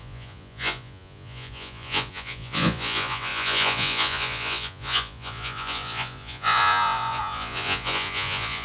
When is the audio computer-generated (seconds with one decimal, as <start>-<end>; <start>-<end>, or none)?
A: 0.0-8.6